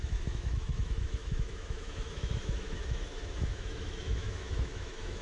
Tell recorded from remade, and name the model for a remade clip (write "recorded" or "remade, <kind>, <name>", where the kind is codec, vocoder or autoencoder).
remade, autoencoder, DAC-VAE